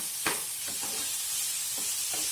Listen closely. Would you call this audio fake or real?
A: real